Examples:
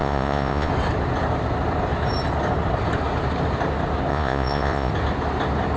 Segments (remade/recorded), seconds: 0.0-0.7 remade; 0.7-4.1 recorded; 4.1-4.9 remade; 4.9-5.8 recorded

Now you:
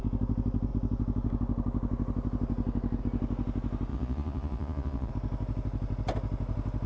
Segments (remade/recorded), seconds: 0.0-3.9 recorded; 3.9-5.1 remade; 5.1-6.9 recorded